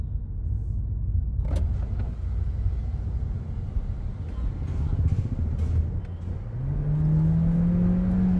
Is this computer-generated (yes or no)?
no